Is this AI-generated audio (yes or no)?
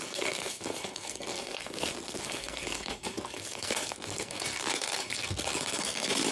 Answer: yes